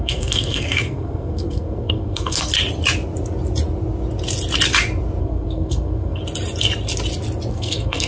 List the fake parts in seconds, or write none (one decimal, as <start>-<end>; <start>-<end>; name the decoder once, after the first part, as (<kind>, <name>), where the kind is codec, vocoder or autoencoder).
0.0-2.5 (codec, SNAC); 5.2-6.2; 7.5-8.1